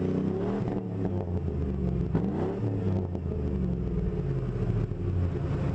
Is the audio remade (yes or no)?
no